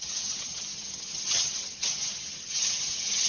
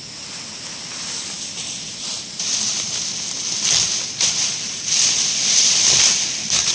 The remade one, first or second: first